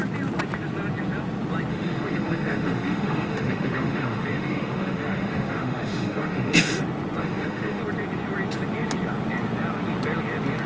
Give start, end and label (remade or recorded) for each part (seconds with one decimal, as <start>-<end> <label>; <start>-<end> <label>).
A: 0.0-1.7 recorded; 1.7-6.8 remade; 6.8-7.2 recorded; 7.2-7.8 remade; 7.8-10.7 recorded